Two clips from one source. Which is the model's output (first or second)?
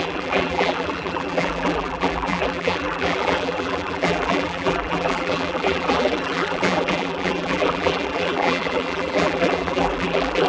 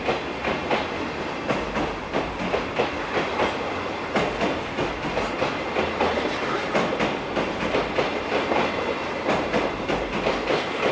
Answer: first